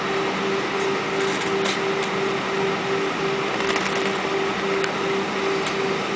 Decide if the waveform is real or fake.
real